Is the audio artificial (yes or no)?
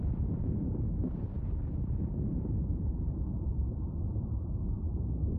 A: yes